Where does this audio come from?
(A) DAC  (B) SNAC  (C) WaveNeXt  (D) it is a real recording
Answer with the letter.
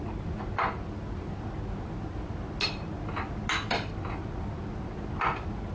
D